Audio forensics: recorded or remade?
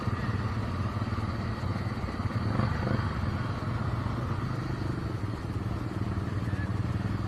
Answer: recorded